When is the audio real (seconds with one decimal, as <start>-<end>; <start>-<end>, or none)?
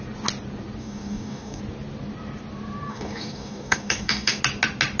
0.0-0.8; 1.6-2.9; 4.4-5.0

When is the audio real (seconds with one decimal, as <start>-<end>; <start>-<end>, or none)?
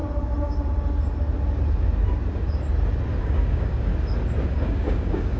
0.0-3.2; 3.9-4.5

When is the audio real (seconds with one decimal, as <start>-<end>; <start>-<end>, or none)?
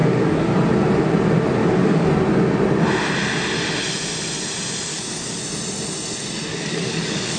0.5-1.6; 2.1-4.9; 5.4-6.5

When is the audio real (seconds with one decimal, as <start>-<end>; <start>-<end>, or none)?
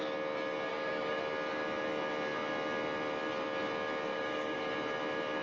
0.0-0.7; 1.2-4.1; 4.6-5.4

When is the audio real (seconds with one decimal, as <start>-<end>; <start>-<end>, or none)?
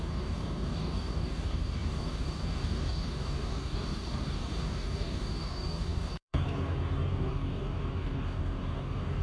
none